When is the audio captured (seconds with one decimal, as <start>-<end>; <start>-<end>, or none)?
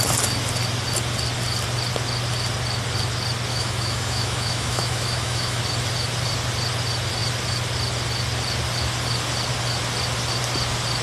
0.0-3.5; 5.6-11.0